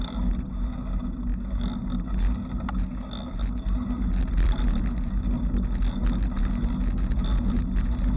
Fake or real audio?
real